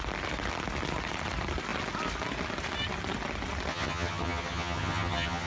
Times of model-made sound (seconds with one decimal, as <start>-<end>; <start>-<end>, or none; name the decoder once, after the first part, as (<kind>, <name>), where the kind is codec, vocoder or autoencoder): 3.7-5.5 (vocoder, HiFi-GAN)